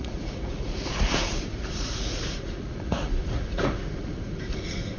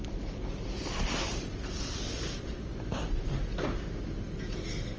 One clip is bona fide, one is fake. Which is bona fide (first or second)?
second